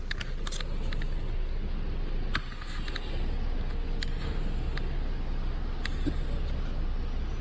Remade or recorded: recorded